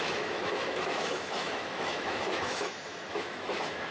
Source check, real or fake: fake